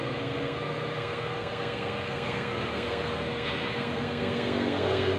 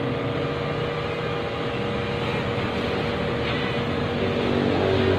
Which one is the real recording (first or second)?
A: second